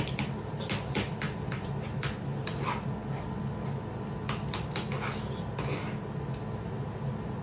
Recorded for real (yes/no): yes